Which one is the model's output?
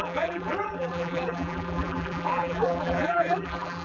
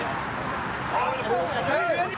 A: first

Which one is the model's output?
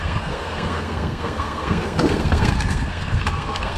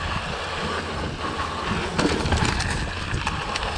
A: first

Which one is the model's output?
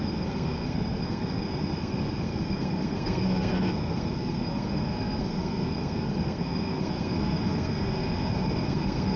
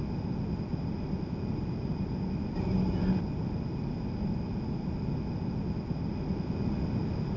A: first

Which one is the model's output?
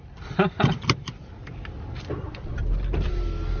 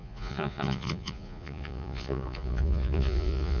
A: second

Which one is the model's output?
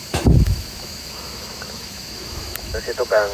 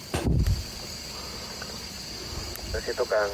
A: first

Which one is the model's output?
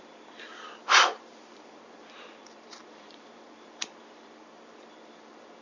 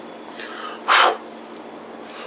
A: first